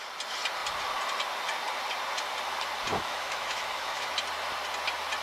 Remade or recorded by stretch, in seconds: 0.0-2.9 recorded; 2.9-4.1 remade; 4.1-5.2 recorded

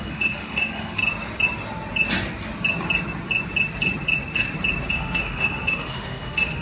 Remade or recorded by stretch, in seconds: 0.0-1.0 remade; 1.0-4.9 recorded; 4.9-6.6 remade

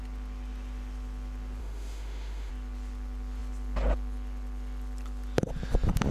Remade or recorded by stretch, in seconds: 0.0-1.6 recorded; 1.6-2.5 remade; 2.5-6.1 recorded

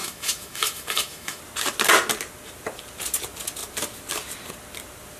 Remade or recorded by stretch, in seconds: 0.0-1.4 remade; 1.4-5.2 recorded